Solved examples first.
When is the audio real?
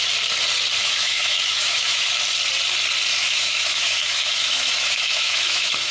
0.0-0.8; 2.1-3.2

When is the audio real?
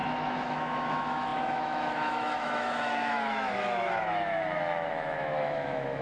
none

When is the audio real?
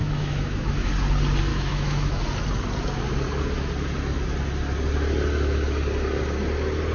0.9-1.5; 2.2-6.9